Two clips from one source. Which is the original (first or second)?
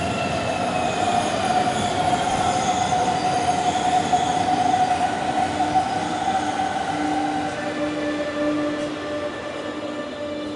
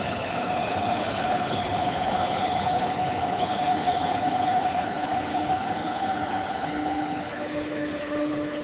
first